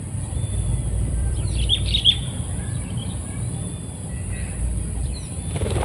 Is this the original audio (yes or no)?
no